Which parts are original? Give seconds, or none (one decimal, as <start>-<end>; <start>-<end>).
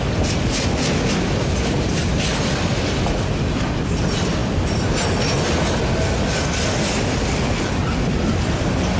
0.0-9.0